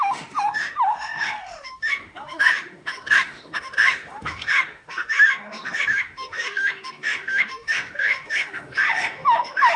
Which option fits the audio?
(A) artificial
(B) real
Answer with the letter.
A